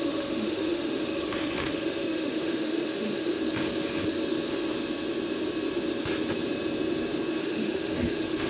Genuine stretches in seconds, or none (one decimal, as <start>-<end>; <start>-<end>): 3.4-7.4